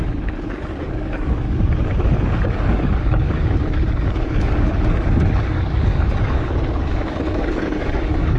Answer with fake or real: fake